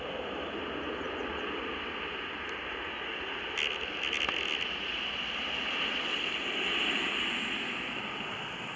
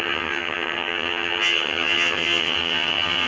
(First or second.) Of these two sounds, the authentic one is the first